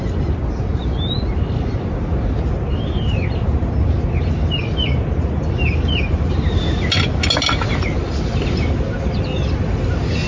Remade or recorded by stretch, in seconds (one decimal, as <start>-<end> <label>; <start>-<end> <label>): 0.0-10.3 recorded